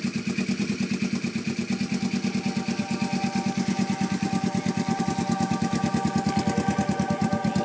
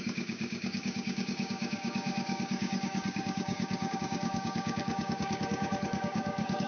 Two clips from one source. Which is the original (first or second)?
first